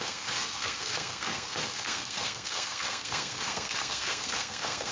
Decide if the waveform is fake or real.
fake